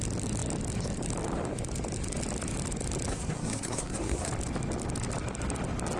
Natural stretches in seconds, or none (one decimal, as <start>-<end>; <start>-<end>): 0.0-3.1; 4.3-6.0